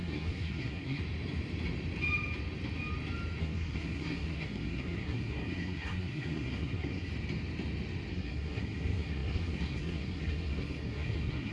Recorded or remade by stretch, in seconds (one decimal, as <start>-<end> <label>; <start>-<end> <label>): 0.0-1.0 remade; 1.0-3.4 recorded; 3.4-7.1 remade; 7.1-8.1 recorded; 8.1-11.5 remade